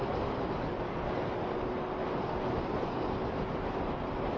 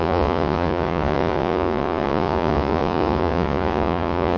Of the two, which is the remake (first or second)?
second